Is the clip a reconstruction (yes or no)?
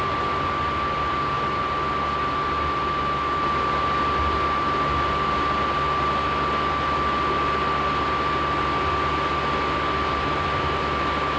no